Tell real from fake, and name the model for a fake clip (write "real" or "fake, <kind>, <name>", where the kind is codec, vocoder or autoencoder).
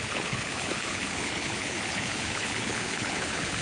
fake, codec, HILCodec